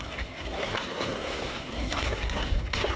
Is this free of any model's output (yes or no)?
no